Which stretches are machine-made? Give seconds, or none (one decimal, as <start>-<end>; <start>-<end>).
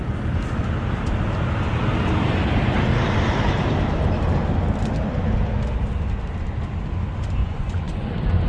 7.4-8.1